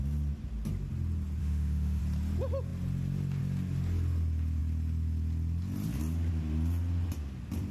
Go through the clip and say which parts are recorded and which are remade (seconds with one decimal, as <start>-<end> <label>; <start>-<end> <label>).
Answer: 0.0-1.4 recorded; 1.4-2.0 remade; 2.0-7.7 recorded